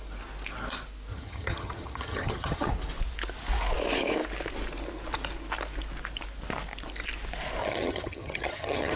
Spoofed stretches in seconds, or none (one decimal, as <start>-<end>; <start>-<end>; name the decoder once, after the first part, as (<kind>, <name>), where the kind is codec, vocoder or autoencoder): 1.1-2.7 (vocoder, HiFi-GAN); 7.6-9.0